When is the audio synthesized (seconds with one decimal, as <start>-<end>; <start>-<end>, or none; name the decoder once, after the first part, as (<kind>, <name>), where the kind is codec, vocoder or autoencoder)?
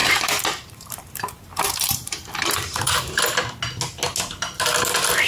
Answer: 0.0-3.2 (vocoder, BigVGAN v2)